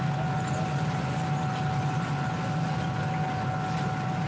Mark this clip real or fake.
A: real